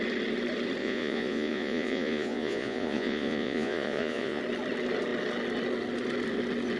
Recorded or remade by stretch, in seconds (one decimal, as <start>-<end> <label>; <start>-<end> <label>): 0.0-0.8 recorded; 0.8-4.4 remade; 4.4-6.8 recorded